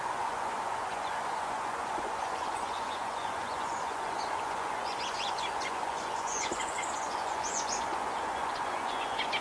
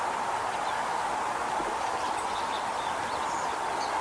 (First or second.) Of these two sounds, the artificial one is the first